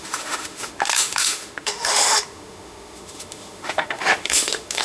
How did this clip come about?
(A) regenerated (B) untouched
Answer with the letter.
A